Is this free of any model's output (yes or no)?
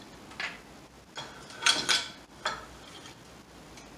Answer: yes